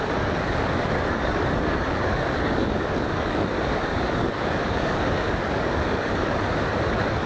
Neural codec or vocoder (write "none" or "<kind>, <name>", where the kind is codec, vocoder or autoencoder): codec, DAC